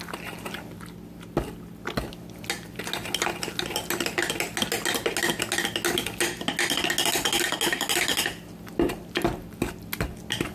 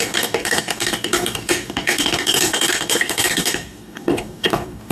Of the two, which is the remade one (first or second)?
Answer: second